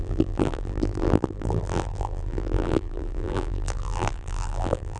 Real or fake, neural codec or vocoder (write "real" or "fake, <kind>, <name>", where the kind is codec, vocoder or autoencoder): fake, vocoder, BigVGAN v2